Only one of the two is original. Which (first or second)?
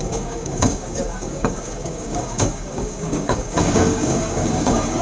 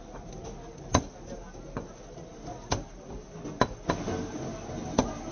second